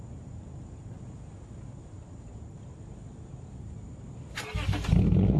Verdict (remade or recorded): recorded